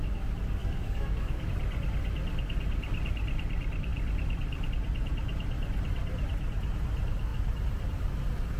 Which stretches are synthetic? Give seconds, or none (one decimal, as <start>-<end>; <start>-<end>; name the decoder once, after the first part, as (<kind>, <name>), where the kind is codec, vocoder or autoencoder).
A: 0.6-1.5 (codec, DAC)